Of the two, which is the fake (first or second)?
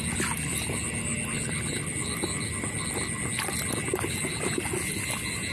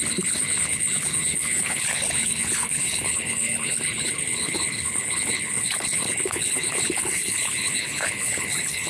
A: second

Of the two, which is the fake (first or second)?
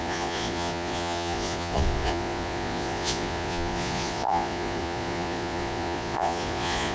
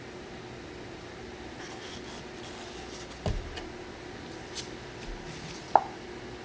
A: first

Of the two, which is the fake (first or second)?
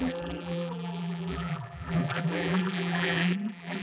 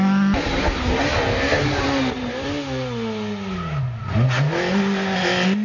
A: first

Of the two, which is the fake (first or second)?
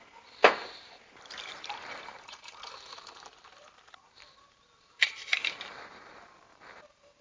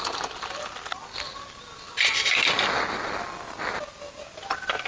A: first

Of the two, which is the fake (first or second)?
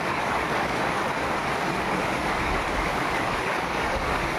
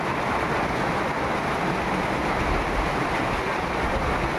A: first